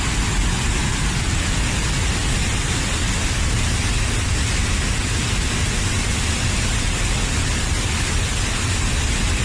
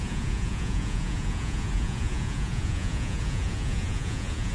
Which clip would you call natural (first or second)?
first